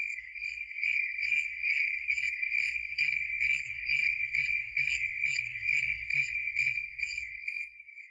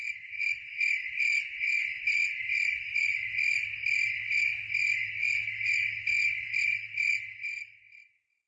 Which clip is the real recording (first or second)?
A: second